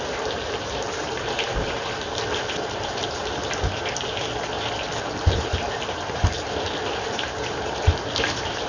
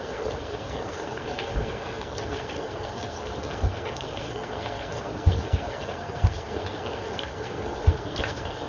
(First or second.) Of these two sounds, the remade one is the second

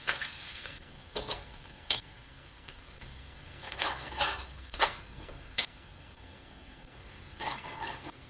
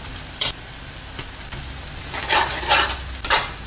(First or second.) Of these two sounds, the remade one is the first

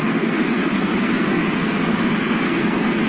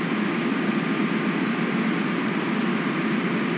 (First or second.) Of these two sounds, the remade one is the first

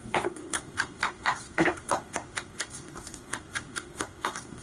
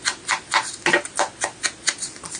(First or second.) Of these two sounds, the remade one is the first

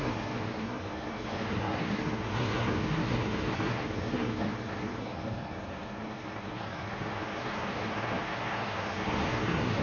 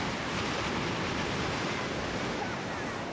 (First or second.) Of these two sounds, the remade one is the first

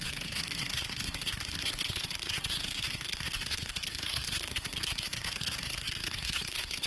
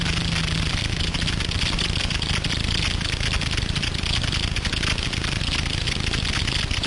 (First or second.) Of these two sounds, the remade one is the first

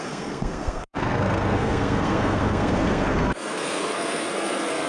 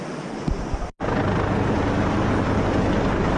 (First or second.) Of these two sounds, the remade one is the first